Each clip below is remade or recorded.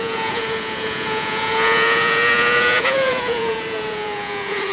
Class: remade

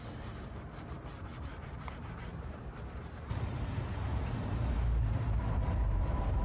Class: remade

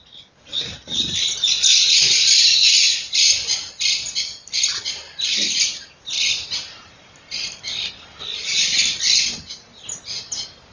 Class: recorded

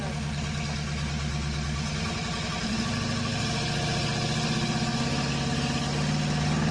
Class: recorded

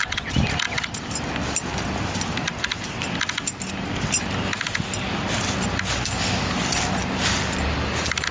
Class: recorded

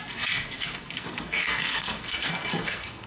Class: remade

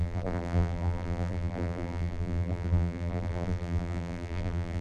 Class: remade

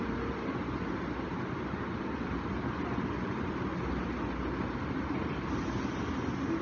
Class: recorded